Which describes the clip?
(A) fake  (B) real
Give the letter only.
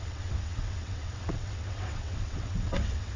A